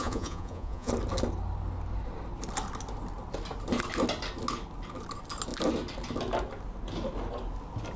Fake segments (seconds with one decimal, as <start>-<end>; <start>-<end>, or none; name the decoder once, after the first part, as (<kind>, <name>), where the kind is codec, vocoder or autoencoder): 0.0-0.9 (vocoder, Vocos)